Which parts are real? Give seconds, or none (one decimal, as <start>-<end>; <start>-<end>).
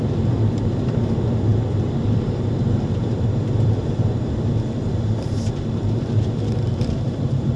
none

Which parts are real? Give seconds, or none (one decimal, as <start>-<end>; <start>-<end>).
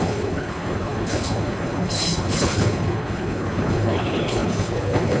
none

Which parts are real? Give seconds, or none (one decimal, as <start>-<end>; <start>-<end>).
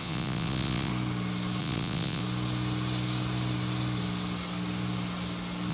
0.9-1.6; 2.2-5.7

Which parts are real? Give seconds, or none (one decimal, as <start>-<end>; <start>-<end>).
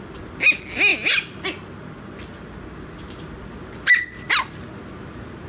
0.0-5.5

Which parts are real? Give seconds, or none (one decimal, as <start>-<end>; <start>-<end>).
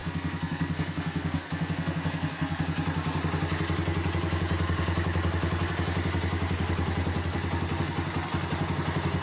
2.6-9.2